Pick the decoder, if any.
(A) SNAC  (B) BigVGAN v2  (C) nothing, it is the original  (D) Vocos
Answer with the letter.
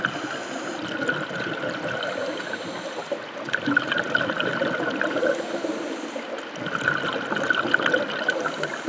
C